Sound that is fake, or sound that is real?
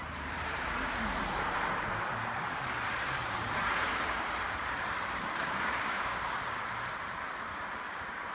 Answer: fake